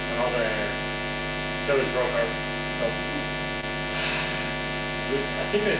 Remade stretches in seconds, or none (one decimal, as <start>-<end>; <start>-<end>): none